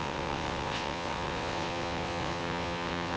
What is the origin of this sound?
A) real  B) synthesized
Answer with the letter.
B